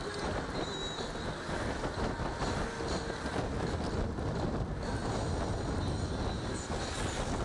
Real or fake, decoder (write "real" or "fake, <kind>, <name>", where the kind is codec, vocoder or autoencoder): real